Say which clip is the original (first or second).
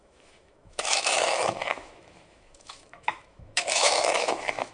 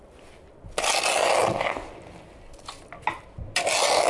second